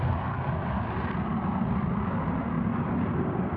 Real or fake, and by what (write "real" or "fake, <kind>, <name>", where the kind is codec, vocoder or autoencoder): real